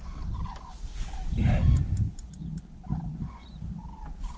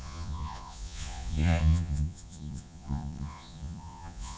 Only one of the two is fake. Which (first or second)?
second